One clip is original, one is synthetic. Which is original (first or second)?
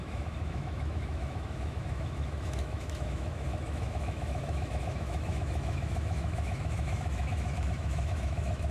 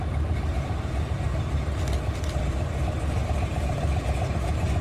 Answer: second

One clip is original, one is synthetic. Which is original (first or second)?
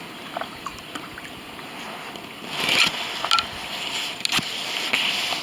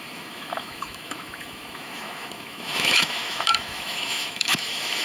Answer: first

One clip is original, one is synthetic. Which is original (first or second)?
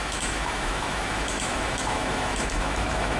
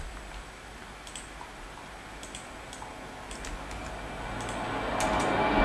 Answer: second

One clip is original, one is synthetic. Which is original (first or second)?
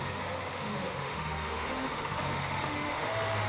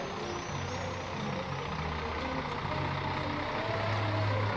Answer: second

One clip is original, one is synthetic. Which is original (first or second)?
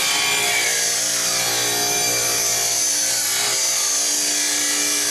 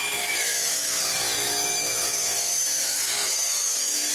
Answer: first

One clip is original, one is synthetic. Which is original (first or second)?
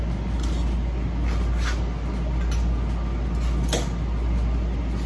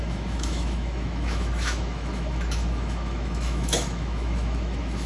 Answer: first